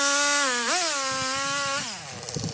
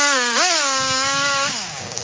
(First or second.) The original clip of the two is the first